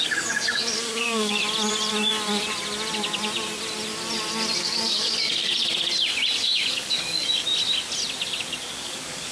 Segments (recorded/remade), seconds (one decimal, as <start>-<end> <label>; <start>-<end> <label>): 0.0-1.4 remade; 1.4-4.6 recorded; 4.6-5.5 remade; 5.5-6.4 recorded; 6.4-7.5 remade; 7.5-8.4 recorded; 8.4-9.3 remade